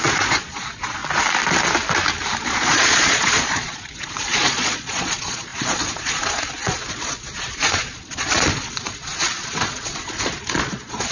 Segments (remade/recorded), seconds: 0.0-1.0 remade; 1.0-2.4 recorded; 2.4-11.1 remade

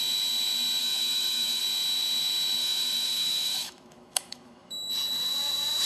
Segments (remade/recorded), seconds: 0.0-0.8 recorded; 0.8-1.6 remade; 1.6-2.6 recorded; 2.6-4.9 remade; 4.9-5.9 recorded

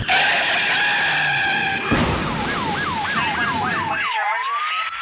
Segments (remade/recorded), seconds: 0.0-5.0 recorded